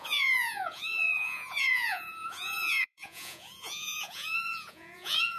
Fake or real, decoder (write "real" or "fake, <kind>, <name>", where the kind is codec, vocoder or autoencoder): fake, vocoder, Vocos